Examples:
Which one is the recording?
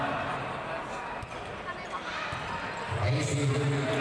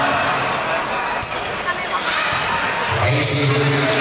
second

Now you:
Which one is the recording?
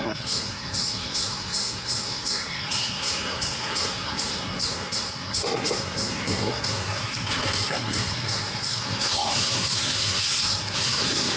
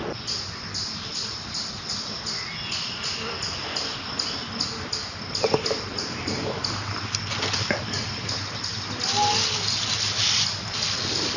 second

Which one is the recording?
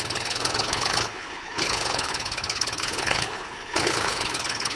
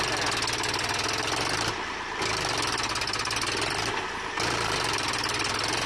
second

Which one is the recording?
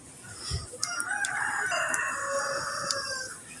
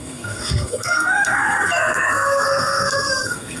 first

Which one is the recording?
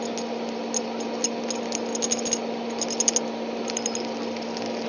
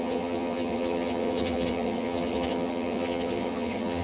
first